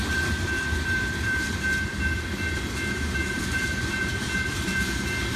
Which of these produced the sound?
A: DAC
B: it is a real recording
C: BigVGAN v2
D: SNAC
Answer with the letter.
C